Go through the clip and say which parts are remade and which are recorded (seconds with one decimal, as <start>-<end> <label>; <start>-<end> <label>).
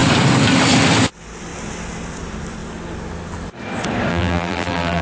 0.0-4.1 recorded; 4.1-5.0 remade